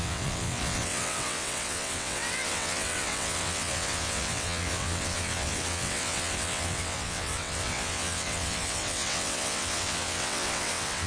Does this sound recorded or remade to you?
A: remade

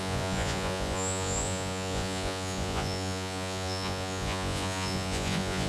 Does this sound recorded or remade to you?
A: remade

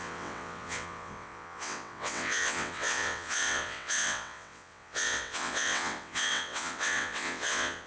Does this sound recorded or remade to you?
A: remade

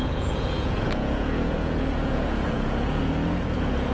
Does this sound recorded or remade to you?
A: remade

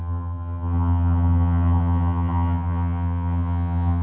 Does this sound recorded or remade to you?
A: remade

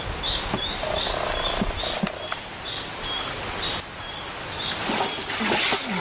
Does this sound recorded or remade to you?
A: recorded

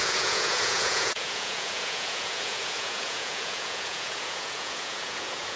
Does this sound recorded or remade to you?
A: remade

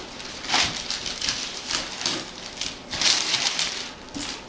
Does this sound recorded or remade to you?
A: recorded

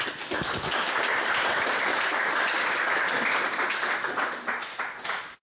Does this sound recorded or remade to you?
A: recorded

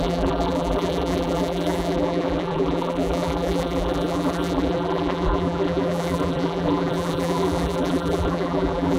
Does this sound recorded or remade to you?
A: remade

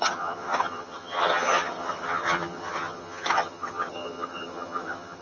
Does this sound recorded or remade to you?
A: remade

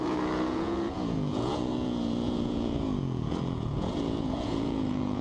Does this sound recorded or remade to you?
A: remade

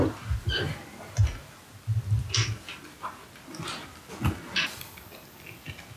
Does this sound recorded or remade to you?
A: recorded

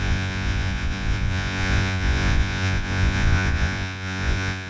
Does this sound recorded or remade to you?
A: remade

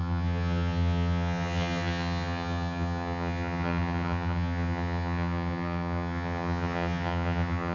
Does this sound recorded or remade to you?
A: remade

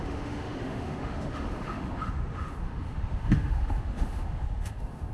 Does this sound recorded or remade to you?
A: remade